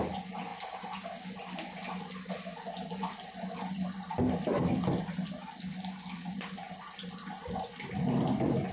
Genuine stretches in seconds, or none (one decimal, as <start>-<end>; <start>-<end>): 0.0-8.7